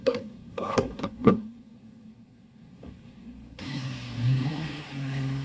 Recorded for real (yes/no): no